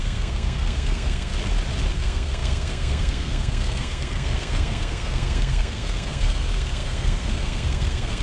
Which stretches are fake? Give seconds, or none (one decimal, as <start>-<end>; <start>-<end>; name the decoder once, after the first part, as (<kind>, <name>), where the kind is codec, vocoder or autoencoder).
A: 0.0-1.3 (codec, SNAC); 1.9-8.2